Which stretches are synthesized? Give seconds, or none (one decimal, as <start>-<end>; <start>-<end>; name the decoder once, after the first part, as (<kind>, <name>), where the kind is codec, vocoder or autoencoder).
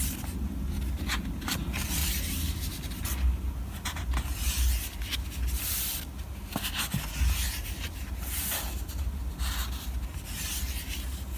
2.0-3.5 (vocoder, BigVGAN v2)